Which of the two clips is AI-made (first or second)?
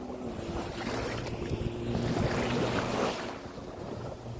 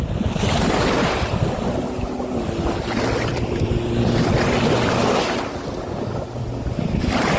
second